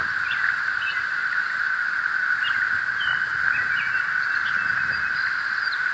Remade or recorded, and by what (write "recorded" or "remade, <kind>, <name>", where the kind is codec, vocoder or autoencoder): recorded